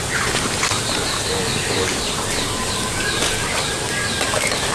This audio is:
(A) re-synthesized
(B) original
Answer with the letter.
B